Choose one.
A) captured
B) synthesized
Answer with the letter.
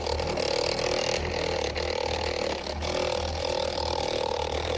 A